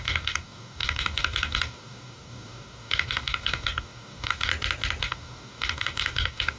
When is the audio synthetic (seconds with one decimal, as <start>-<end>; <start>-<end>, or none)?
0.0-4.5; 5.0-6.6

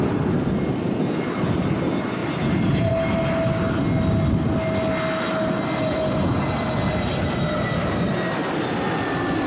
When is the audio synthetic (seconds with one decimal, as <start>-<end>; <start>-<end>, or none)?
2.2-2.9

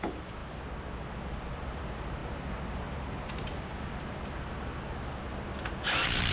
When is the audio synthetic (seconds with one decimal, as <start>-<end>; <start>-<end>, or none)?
none